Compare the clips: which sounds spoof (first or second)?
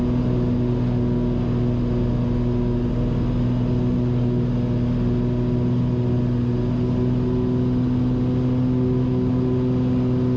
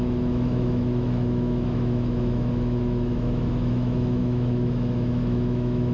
second